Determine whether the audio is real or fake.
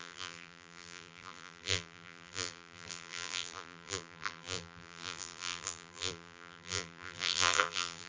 fake